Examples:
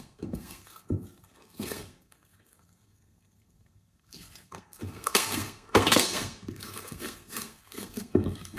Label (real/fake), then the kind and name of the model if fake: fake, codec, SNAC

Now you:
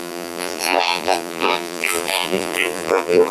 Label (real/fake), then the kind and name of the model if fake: fake, vocoder, BigVGAN v2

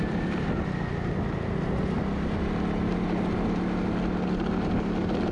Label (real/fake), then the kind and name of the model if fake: real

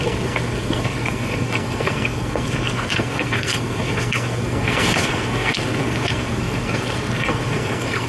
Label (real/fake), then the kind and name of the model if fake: fake, codec, SNAC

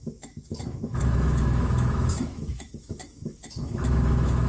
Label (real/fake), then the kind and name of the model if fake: fake, autoencoder, DAC-VAE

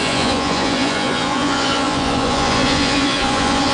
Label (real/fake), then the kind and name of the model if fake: fake, vocoder, Vocos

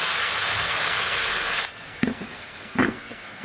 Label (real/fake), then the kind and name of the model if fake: fake, codec, SNAC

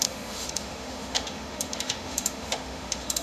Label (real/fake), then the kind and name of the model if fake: fake, autoencoder, DAC-VAE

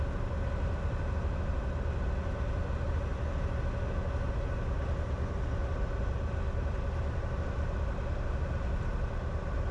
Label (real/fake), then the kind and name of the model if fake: real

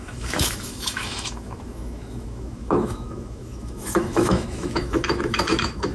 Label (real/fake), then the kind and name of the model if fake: fake, autoencoder, DAC-VAE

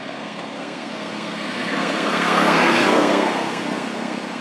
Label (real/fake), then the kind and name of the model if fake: fake, codec, SNAC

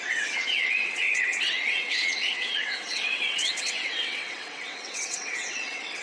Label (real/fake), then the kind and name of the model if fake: fake, vocoder, WaveNeXt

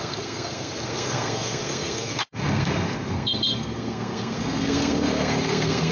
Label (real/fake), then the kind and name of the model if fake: fake, codec, SNAC